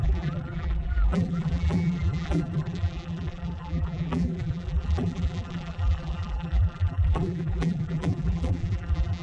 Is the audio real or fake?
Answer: fake